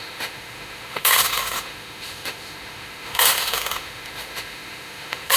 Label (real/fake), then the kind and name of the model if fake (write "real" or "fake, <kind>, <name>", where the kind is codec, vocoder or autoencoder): fake, autoencoder, DAC-VAE